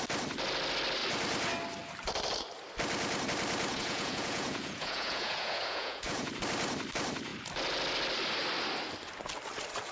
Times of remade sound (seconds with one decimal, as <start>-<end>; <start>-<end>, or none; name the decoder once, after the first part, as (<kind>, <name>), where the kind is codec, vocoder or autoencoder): 3.7-6.3 (vocoder, Vocos)